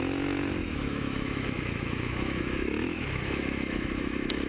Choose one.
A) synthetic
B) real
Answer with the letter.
A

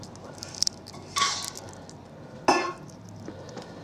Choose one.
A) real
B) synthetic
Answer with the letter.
A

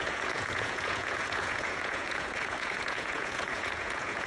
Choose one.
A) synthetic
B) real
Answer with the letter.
A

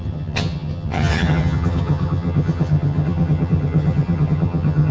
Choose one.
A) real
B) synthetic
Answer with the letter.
B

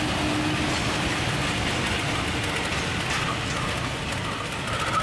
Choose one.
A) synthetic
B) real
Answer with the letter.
B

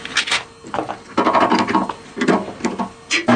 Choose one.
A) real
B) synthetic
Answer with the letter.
A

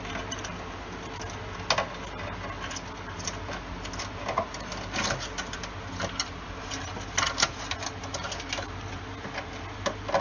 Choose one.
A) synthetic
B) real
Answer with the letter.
B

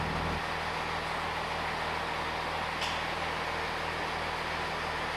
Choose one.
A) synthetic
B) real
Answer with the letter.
B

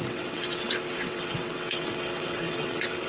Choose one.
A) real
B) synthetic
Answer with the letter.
B